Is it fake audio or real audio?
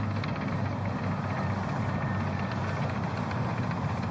real